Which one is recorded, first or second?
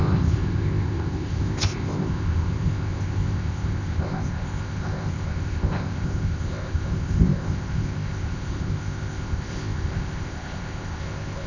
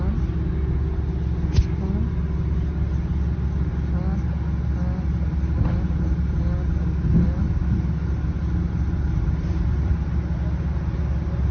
second